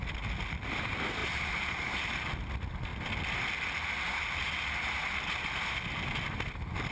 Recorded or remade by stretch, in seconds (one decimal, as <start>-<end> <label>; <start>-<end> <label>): 0.0-1.2 recorded; 1.2-1.7 remade; 1.7-6.9 recorded